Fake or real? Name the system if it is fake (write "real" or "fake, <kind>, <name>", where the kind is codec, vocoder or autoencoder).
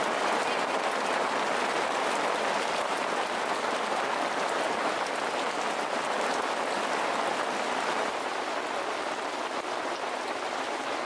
real